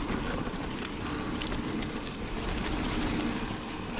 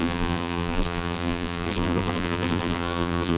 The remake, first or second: second